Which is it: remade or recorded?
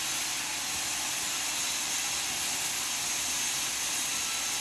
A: recorded